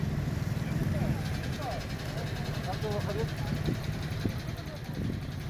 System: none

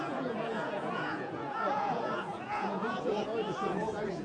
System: vocoder, Vocos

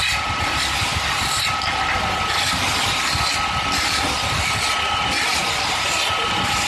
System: none